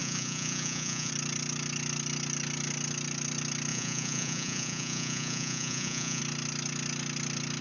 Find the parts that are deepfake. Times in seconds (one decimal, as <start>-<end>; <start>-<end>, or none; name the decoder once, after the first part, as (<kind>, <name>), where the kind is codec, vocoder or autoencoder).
0.0-1.1 (vocoder, Vocos); 3.7-6.2